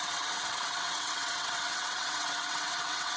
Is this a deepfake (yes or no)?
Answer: yes